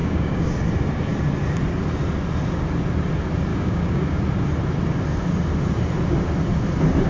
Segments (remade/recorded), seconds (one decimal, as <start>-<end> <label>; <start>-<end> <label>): 0.0-0.5 remade; 0.5-3.5 recorded; 3.5-4.2 remade; 4.2-7.1 recorded